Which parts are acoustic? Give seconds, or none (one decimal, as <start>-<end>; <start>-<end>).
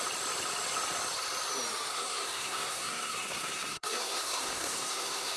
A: 0.0-1.9